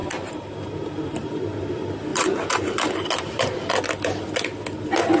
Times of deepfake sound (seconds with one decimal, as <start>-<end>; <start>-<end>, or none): 0.0-0.7; 2.1-3.7